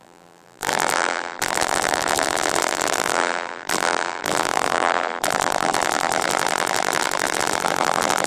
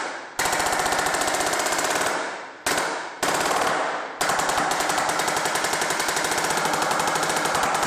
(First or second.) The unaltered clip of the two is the second